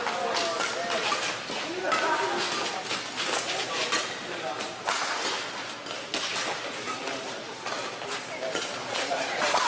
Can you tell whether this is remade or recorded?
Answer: recorded